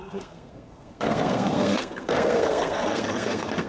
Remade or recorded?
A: remade